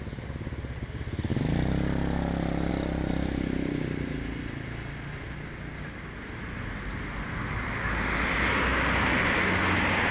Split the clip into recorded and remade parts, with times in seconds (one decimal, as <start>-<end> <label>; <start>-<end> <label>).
0.0-10.1 recorded